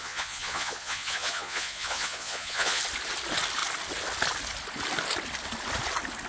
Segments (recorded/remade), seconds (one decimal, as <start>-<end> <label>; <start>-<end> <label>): 0.0-2.8 remade; 2.8-6.3 recorded